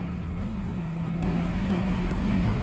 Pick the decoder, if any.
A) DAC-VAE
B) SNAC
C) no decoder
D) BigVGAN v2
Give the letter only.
B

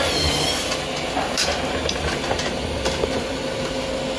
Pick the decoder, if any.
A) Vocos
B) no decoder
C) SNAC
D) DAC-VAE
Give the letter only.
B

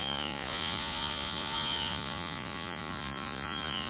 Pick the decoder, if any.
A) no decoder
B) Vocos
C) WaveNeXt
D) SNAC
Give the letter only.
B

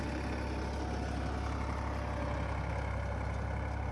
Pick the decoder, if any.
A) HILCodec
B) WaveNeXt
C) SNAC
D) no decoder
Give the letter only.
D